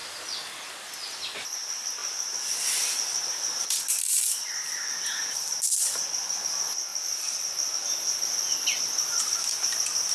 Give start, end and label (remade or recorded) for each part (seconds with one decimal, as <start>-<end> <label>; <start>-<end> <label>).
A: 0.0-10.1 recorded